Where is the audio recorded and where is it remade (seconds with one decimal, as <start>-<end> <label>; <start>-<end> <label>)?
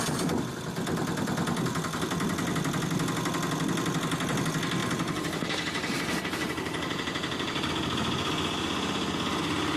0.0-4.8 recorded; 4.8-7.7 remade; 7.7-9.8 recorded